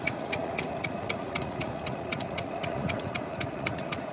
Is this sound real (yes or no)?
no